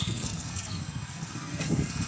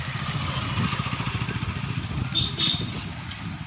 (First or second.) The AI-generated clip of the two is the first